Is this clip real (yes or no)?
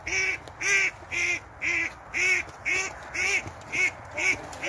yes